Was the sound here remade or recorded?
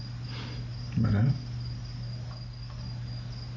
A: recorded